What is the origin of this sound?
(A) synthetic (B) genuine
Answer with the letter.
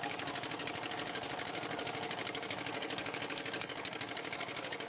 A